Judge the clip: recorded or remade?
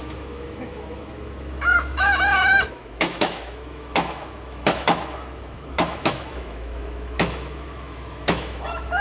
remade